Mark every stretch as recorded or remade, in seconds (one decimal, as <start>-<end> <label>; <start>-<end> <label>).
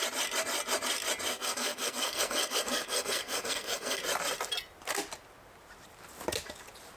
0.0-1.3 recorded; 1.3-4.0 remade; 4.0-7.0 recorded